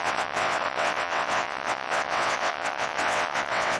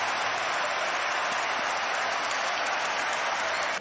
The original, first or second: second